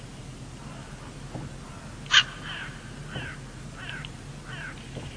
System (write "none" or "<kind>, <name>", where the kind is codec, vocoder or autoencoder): none